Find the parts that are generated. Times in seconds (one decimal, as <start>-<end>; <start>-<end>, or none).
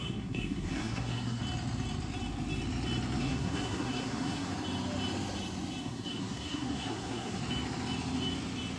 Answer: 0.0-1.4; 3.2-4.5; 5.8-7.4